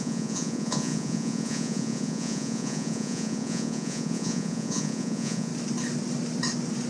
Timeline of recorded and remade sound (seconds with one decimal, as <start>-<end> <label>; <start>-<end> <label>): 0.0-5.5 remade; 5.5-6.9 recorded